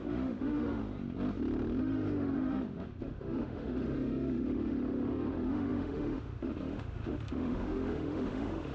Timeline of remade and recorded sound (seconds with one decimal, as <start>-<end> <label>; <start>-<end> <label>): 0.0-0.8 remade; 0.8-1.8 recorded; 1.8-8.7 remade